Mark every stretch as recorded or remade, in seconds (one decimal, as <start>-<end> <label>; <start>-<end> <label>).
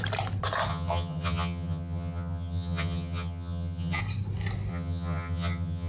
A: 0.0-0.7 recorded; 0.7-4.0 remade; 4.0-4.7 recorded; 4.7-5.9 remade